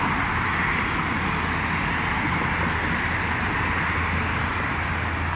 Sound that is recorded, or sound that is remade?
recorded